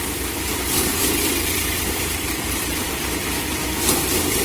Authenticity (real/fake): fake